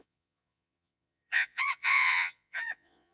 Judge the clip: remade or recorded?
remade